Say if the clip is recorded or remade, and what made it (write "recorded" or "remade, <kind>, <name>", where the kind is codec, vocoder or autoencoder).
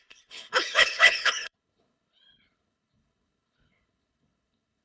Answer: remade, codec, HILCodec